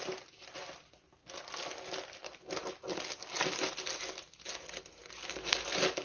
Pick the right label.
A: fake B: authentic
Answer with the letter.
B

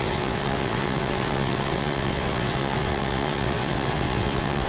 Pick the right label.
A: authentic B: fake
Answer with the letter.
B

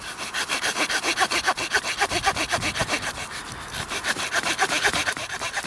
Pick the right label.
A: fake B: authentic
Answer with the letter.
A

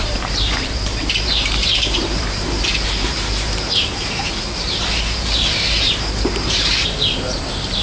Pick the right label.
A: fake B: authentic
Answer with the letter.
A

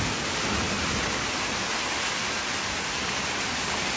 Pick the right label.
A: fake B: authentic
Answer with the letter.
B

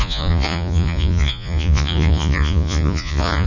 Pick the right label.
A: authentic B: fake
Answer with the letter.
B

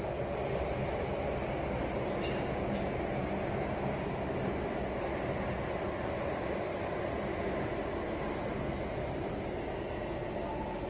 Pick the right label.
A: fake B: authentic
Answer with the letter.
B